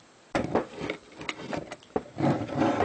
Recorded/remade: recorded